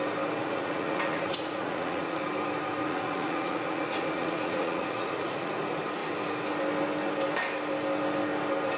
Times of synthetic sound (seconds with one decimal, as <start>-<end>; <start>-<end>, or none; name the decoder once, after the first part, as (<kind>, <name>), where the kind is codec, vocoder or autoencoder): 0.4-2.2 (vocoder, Vocos); 2.8-5.5